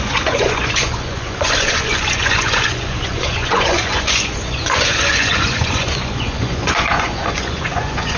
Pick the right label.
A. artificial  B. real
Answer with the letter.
A